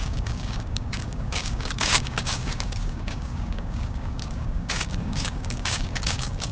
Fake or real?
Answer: fake